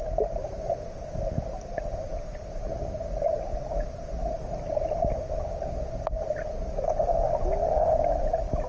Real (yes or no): yes